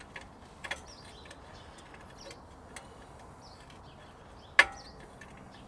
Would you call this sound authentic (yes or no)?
yes